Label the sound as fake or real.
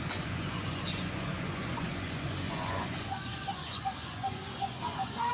fake